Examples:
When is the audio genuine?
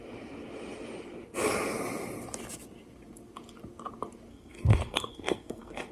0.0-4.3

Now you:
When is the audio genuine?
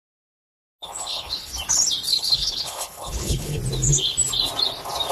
0.0-0.8; 1.5-2.1; 3.6-5.1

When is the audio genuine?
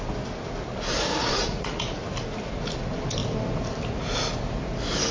0.0-1.1; 2.0-5.1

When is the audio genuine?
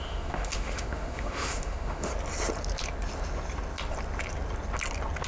2.1-5.3